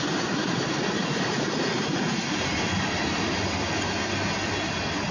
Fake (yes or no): no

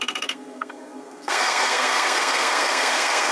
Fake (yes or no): yes